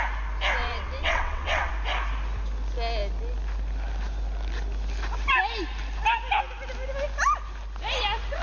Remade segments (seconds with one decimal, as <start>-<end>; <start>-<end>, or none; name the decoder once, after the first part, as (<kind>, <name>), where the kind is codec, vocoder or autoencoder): 0.6-1.7 (vocoder, WaveNeXt)